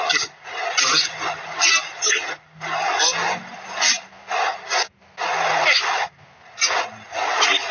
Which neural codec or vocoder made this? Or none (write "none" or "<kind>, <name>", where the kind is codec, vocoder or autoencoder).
none